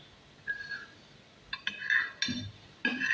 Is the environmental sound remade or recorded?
recorded